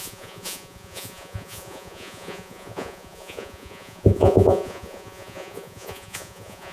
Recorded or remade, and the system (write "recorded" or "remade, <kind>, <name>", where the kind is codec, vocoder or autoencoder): remade, vocoder, Vocos